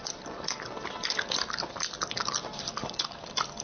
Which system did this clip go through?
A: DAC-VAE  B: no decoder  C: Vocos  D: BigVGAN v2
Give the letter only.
B